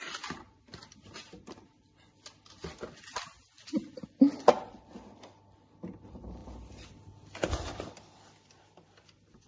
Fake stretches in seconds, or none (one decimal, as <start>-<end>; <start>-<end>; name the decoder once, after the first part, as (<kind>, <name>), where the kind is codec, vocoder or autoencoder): 6.4-9.5 (vocoder, BigVGAN v2)